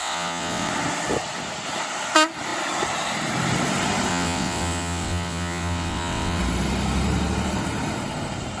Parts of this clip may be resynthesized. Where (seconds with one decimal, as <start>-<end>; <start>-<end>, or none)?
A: 0.0-0.7; 4.1-6.4